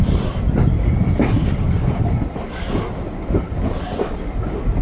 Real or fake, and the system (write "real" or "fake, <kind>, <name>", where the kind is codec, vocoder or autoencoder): real